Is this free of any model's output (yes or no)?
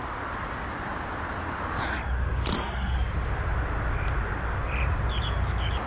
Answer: yes